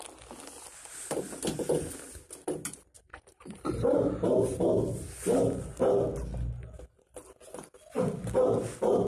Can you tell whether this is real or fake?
real